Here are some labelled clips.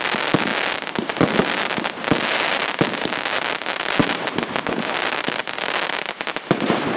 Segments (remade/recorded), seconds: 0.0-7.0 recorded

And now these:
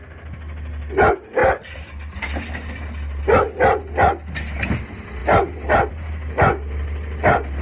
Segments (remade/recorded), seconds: 0.0-7.6 recorded

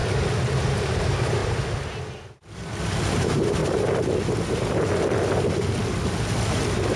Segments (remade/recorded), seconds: 0.0-0.7 recorded; 0.7-1.4 remade; 1.4-2.8 recorded; 2.8-3.6 remade; 3.6-7.0 recorded

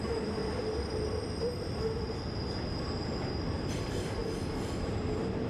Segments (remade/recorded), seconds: 0.0-0.4 remade; 0.4-3.7 recorded; 3.7-4.2 remade; 4.2-4.8 recorded; 4.8-5.5 remade

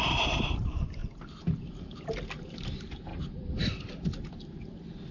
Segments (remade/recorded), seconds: 0.0-1.0 remade; 1.0-2.4 recorded; 2.4-3.1 remade; 3.1-5.1 recorded